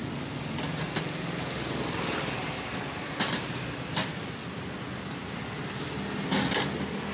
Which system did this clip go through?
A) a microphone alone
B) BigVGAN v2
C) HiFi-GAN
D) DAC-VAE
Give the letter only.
A